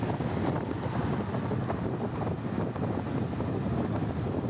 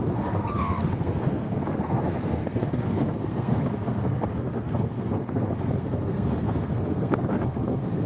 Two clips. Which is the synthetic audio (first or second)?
second